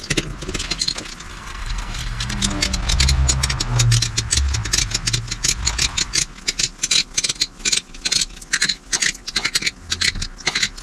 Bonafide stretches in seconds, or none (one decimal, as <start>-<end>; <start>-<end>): 0.0-1.3; 2.4-10.8